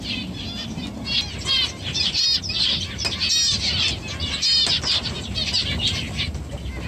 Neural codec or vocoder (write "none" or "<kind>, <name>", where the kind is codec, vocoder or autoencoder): none